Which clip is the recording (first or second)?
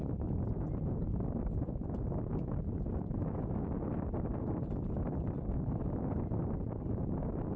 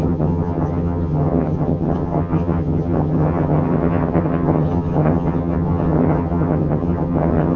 first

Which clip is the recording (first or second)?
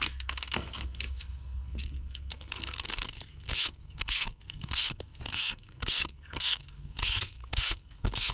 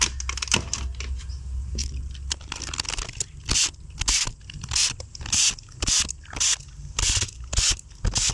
second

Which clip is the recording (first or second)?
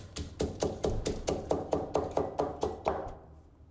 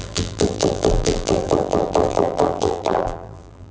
first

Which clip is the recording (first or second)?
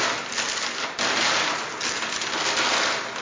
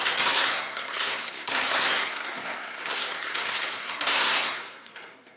first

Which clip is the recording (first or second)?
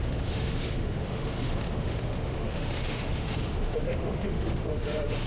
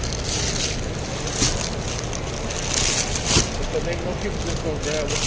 second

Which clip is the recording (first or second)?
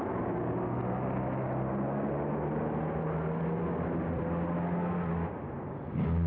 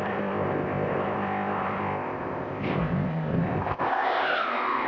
first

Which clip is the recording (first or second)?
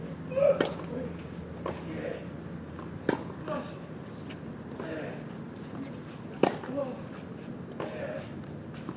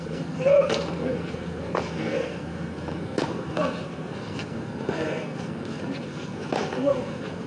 first